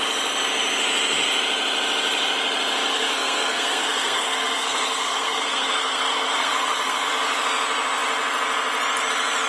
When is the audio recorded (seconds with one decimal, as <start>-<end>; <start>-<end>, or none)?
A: 0.0-2.9; 7.1-9.5